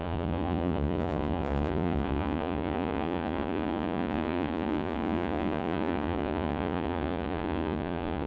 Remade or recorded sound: remade